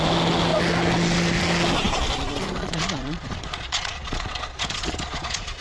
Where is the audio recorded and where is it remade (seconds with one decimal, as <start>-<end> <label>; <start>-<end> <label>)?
0.0-2.6 recorded; 2.6-5.6 remade